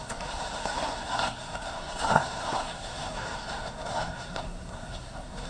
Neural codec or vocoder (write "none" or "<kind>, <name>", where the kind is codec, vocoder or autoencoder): codec, SNAC